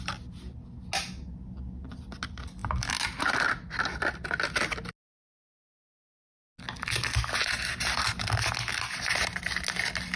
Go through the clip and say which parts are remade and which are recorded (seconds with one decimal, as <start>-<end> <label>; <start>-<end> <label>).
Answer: 0.0-10.2 recorded